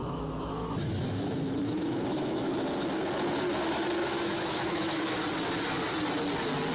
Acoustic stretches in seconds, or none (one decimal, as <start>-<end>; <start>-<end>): 2.5-4.1; 5.2-6.7